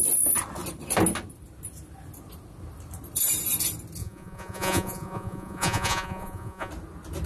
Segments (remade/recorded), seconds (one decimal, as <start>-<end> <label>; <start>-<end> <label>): 0.0-4.0 recorded; 4.0-6.7 remade; 6.7-7.3 recorded